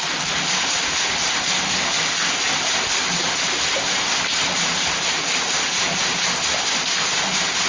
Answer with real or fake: real